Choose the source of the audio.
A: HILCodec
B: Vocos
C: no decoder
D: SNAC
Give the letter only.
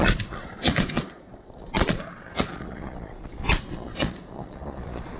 B